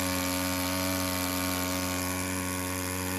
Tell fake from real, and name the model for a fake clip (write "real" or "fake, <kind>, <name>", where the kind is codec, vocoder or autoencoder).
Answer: real